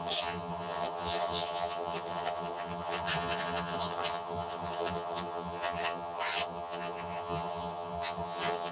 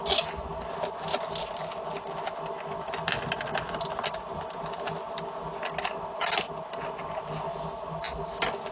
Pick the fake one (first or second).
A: first